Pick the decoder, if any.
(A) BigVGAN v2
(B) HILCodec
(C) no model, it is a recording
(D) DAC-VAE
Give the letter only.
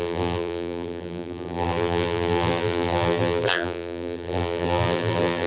A